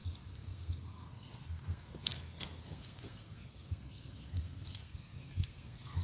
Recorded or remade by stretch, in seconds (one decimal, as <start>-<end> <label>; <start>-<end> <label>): 0.0-6.0 remade